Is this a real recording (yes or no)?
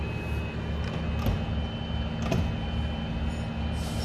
yes